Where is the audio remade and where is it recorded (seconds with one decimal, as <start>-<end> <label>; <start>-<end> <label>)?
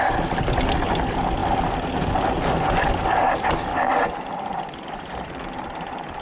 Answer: 0.0-3.7 recorded; 3.7-4.6 remade; 4.6-6.2 recorded